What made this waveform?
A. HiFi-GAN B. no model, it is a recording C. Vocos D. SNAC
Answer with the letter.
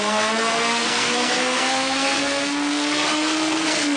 D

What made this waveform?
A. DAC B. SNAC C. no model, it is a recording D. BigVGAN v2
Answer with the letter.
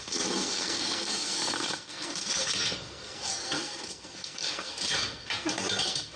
B